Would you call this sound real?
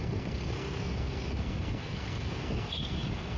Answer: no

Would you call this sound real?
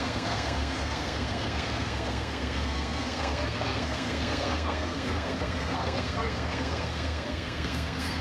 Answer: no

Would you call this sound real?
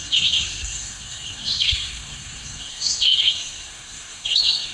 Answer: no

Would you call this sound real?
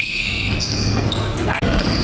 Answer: no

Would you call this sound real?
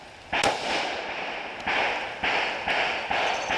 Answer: yes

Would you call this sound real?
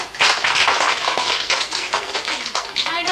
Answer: no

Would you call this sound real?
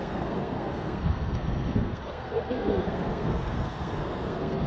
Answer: no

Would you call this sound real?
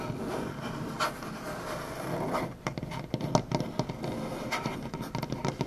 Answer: yes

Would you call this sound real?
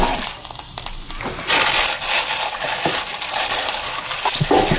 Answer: yes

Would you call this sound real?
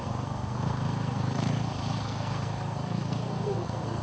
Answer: no